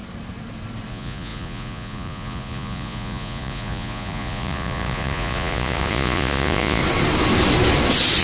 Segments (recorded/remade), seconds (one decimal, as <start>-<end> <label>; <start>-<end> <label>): 0.0-0.9 recorded; 0.9-6.8 remade; 6.8-8.2 recorded